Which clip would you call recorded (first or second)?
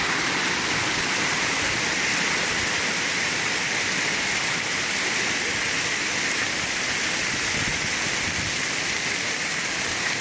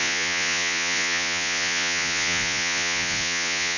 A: first